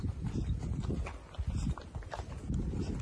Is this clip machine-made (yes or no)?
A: no